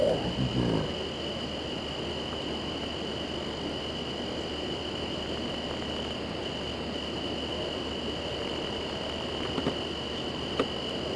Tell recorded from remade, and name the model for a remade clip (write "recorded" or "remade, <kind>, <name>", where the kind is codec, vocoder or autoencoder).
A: recorded